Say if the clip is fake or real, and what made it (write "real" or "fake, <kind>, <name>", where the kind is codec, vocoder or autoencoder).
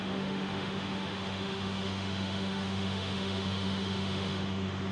fake, autoencoder, DAC-VAE